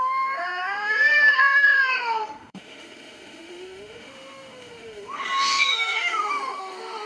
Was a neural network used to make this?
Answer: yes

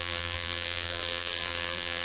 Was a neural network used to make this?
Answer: yes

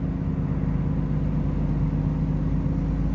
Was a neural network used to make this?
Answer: no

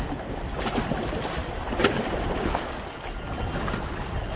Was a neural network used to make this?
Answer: no